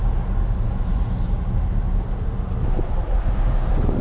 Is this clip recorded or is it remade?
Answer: recorded